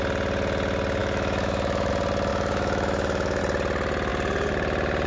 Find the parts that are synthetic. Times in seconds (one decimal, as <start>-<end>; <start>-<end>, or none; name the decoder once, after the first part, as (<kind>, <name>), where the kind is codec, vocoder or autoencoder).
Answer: 1.0-1.9 (autoencoder, DAC-VAE); 2.3-3.4